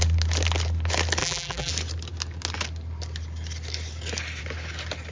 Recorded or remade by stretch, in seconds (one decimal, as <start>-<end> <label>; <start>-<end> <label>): 0.0-1.2 recorded; 1.2-1.7 remade; 1.7-5.1 recorded